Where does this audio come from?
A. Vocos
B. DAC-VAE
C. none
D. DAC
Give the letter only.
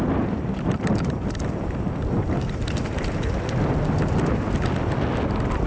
C